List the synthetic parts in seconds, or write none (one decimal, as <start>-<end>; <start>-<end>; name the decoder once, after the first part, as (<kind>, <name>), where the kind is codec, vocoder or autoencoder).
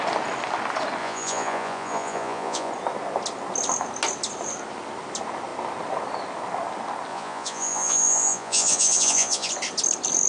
1.0-2.7 (vocoder, Vocos); 7.1-9.5